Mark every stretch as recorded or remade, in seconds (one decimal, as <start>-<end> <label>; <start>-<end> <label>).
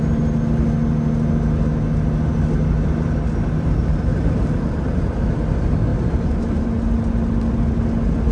0.0-4.1 recorded; 4.1-5.3 remade; 5.3-5.9 recorded; 5.9-6.4 remade; 6.4-8.3 recorded